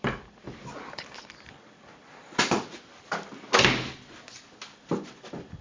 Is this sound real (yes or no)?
yes